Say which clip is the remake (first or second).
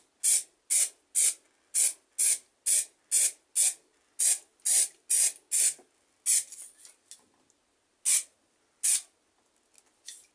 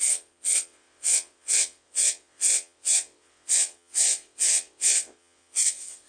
second